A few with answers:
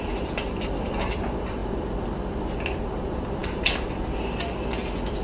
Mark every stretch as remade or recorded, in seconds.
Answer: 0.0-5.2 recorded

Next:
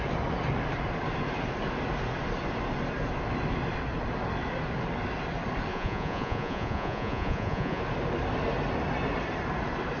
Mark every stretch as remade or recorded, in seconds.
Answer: 0.0-5.7 recorded; 5.7-7.8 remade; 7.8-10.0 recorded

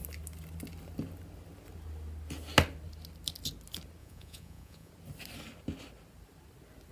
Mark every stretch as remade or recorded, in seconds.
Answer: 0.0-4.0 recorded; 4.0-4.9 remade; 4.9-6.9 recorded

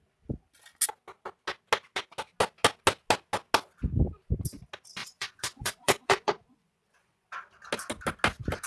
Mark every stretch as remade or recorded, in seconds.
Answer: 0.0-5.0 recorded; 5.0-7.3 remade; 7.3-8.7 recorded

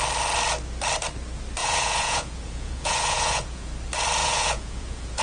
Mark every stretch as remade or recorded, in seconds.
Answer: 0.0-1.6 recorded; 1.6-3.7 remade; 3.7-4.2 recorded; 4.2-5.2 remade

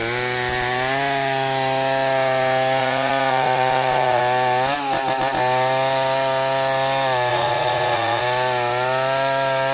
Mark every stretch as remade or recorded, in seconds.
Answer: 0.0-2.8 recorded; 2.8-4.2 remade; 4.2-7.3 recorded; 7.3-8.2 remade; 8.2-9.7 recorded